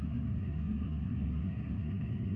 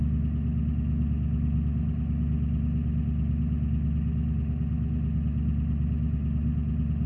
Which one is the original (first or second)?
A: second